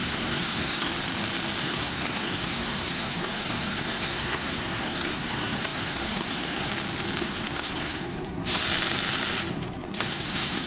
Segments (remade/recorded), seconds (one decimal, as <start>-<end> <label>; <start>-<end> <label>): 0.0-0.9 remade; 0.9-1.6 recorded; 1.6-6.7 remade; 6.7-7.2 recorded; 7.2-8.6 remade; 8.6-9.5 recorded; 9.5-10.7 remade